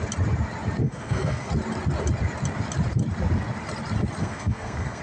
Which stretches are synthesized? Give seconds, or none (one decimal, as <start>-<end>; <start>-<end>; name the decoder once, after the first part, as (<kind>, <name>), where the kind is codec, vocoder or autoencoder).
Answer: 0.8-1.5 (codec, SNAC); 4.2-5.0